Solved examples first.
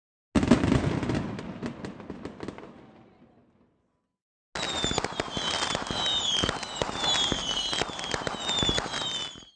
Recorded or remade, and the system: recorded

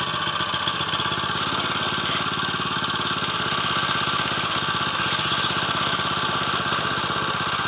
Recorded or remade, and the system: recorded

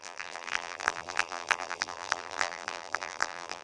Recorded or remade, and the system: remade, vocoder, BigVGAN v2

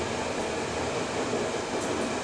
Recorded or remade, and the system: recorded